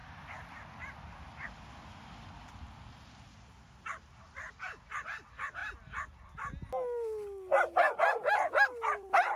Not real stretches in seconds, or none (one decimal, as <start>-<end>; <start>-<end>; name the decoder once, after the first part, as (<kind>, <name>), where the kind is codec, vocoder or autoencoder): none